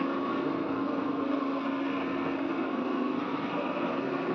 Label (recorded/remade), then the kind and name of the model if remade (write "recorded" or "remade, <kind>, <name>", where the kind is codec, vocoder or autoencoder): remade, codec, SNAC